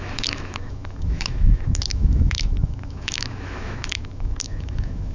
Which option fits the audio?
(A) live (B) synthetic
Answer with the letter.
B